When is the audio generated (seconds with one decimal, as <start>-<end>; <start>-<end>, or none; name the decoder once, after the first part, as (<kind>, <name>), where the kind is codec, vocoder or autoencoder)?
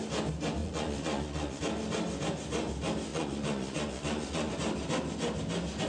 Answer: 0.6-1.6 (vocoder, Vocos); 3.1-4.5